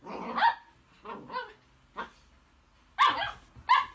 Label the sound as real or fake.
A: real